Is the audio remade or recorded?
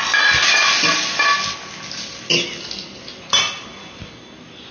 recorded